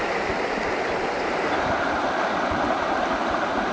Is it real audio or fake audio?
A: real